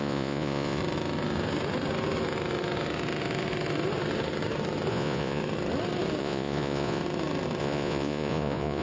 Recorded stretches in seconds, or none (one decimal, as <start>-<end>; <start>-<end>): 0.8-4.9; 5.4-6.2; 7.0-7.6